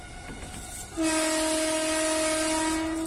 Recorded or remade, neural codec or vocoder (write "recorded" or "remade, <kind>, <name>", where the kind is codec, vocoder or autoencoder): recorded